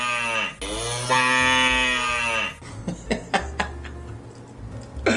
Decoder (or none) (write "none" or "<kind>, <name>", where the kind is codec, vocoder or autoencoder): none